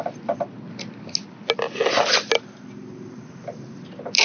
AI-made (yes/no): no